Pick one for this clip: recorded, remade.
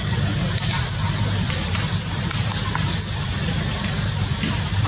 remade